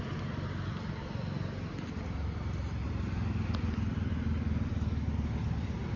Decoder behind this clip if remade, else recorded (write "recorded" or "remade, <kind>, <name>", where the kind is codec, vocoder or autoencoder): recorded